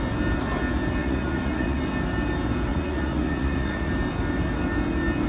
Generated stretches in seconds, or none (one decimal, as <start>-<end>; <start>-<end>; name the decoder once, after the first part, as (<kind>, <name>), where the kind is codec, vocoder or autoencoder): 1.0-1.8 (vocoder, Vocos); 2.7-3.9